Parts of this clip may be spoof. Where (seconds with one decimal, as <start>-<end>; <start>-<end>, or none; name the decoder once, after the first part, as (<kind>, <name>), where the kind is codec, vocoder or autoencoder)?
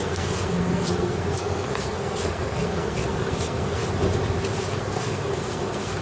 0.0-3.8 (codec, SNAC); 4.7-6.0